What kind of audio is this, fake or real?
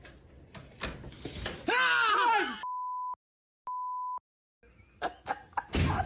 real